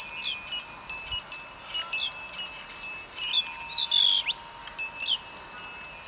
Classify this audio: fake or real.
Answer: real